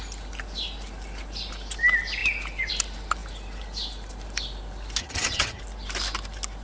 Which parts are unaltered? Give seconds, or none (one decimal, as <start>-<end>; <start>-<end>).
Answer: 0.0-5.0; 5.6-6.6